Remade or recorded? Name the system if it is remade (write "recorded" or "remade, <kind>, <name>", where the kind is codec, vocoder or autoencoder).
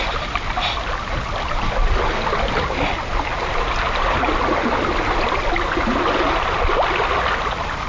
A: recorded